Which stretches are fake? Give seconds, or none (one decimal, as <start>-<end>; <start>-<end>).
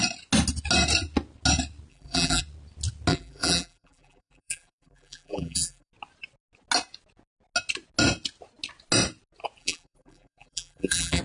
1.9-2.4; 3.1-5.9; 9.6-11.2